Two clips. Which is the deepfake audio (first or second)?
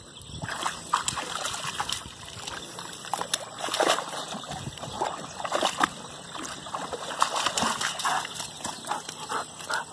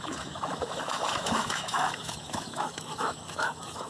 second